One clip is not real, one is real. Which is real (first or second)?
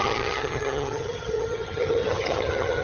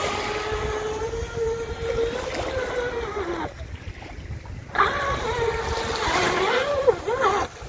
second